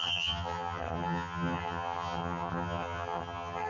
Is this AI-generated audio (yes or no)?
yes